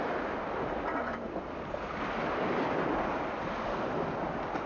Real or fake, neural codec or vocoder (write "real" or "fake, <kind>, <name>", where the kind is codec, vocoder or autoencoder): real